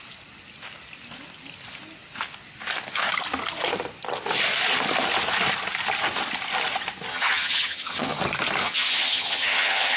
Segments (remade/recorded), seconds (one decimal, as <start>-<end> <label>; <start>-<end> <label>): 0.0-7.1 recorded; 7.1-8.2 remade; 8.2-8.6 recorded; 8.6-10.0 remade